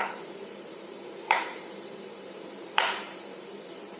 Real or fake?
fake